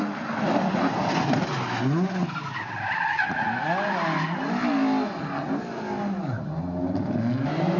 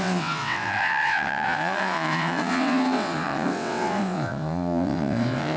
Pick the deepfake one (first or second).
second